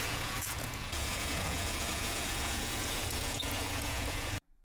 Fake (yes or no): yes